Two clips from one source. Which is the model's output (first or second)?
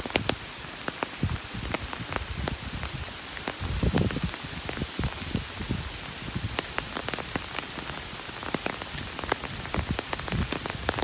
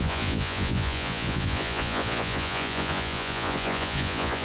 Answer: second